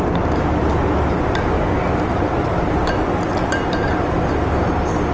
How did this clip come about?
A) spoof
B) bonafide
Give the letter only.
B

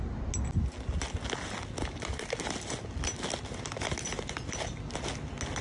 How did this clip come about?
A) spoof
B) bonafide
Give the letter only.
B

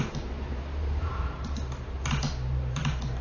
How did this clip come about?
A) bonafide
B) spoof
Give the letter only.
B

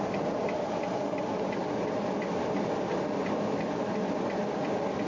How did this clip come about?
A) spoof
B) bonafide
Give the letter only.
B